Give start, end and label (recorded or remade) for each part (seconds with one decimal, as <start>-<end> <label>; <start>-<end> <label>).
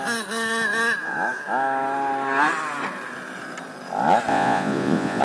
0.0-4.3 recorded; 4.3-5.2 remade